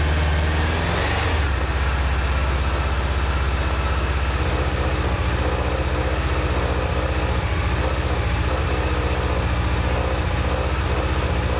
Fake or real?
real